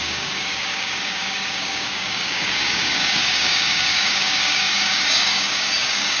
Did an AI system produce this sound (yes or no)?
yes